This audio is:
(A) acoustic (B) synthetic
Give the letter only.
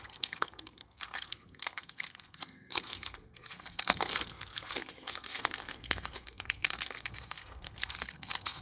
B